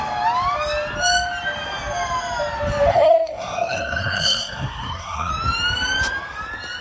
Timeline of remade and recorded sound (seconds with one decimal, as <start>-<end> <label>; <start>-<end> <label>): 0.0-2.9 recorded; 2.9-5.3 remade; 5.3-6.8 recorded